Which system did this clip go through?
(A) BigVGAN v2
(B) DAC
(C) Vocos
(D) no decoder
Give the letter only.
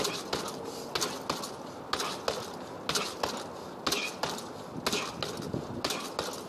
D